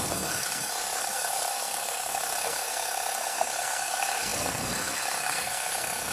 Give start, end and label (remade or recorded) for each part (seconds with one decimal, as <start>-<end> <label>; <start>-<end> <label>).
0.0-6.1 remade